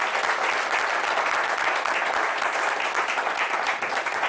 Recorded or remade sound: recorded